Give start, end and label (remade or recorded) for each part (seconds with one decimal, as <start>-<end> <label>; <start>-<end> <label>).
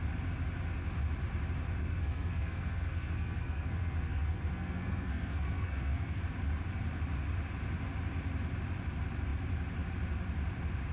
0.0-1.8 recorded; 1.8-6.2 remade; 6.2-10.9 recorded